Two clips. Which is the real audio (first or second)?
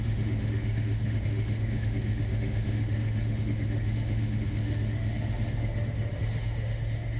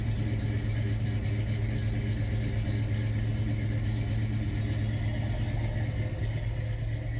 second